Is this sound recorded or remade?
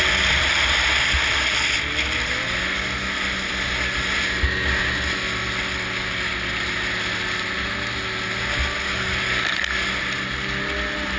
recorded